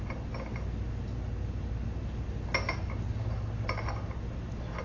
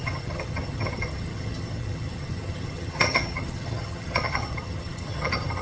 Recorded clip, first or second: first